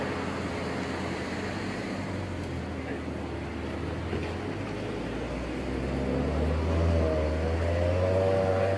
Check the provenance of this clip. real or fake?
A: real